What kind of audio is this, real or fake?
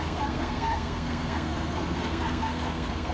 fake